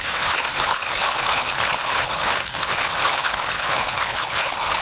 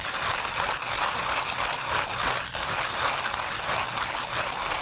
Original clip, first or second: second